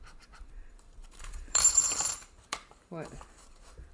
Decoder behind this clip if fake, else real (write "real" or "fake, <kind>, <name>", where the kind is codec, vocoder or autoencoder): fake, vocoder, BigVGAN v2